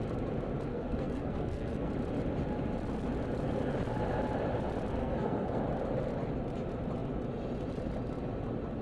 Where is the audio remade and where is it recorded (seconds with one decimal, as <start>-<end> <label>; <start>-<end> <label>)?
0.0-0.7 recorded; 0.7-1.9 remade; 1.9-5.0 recorded; 5.0-5.6 remade; 5.6-8.8 recorded